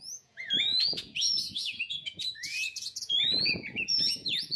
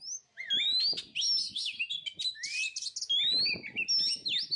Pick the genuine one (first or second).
second